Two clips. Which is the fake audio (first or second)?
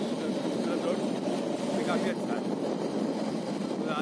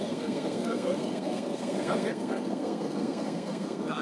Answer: second